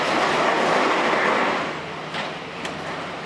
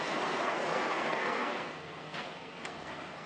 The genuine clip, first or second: first